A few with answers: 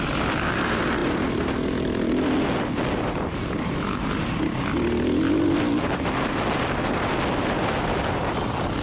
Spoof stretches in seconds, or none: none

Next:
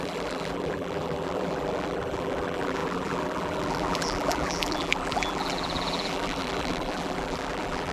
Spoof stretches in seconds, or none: 0.0-7.9 (vocoder, BigVGAN v2)

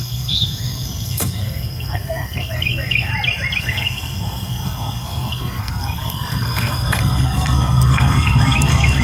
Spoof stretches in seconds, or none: 0.0-3.1 (codec, SNAC); 3.6-9.0

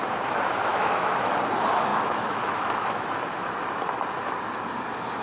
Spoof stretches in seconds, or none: 0.7-1.3 (autoencoder, DAC-VAE); 1.9-3.1

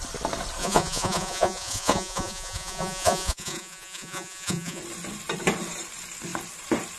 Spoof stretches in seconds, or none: 0.6-4.8 (vocoder, Vocos)